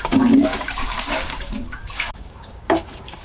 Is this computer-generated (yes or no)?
yes